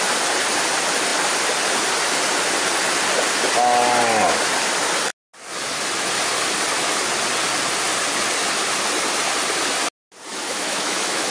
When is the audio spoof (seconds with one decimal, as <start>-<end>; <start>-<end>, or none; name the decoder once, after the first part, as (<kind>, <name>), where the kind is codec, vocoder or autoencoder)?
10.3-11.3 (autoencoder, DAC-VAE)